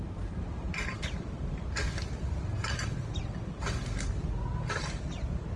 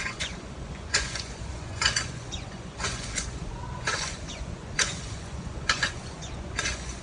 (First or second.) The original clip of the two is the first